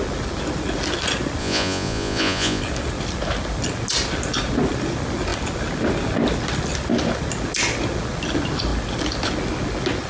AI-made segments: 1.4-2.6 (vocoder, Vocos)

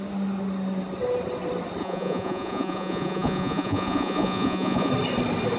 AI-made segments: 1.8-4.9 (vocoder, Vocos)

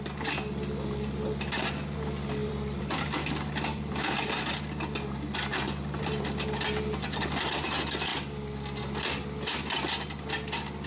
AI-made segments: 2.4-3.3 (vocoder, BigVGAN v2); 3.7-4.5

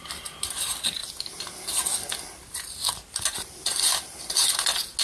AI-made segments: none

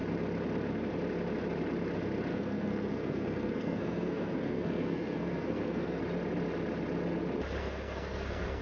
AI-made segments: 2.3-6.0 (codec, SNAC); 7.6-8.6